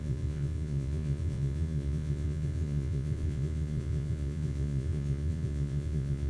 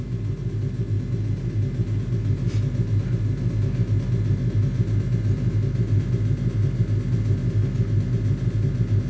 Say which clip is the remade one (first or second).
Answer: first